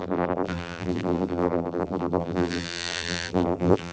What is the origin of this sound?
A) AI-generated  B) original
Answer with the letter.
A